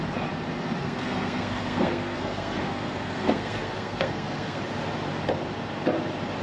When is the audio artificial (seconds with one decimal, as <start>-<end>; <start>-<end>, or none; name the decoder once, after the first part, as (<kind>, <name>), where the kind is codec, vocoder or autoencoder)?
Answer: 0.8-4.6 (codec, SNAC)